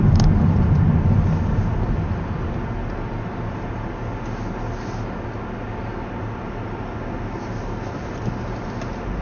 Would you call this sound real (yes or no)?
yes